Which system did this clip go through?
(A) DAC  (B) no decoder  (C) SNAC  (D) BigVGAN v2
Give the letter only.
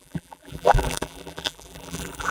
D